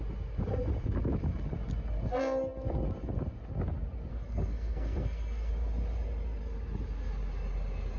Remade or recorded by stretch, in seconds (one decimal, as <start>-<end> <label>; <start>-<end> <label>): 0.0-4.1 recorded; 4.1-5.5 remade; 5.5-8.0 recorded